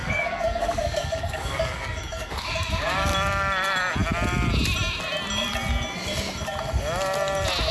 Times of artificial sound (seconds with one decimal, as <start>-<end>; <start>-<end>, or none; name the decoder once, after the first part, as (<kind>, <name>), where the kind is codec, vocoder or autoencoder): 0.0-3.1 (codec, DAC)